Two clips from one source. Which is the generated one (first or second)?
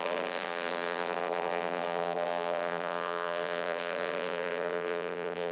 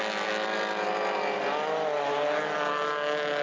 first